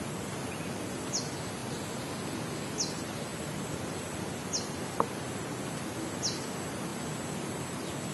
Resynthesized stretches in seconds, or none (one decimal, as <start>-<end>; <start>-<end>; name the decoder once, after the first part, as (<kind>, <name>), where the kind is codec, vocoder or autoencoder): none